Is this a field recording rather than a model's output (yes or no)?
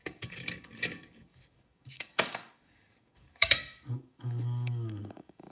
no